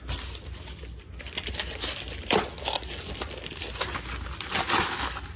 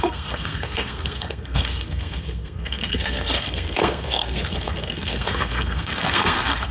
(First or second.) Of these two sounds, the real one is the first